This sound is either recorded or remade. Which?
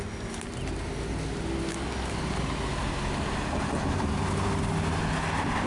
recorded